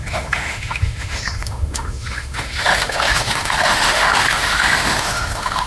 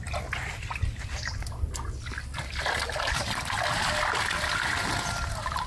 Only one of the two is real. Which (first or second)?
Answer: second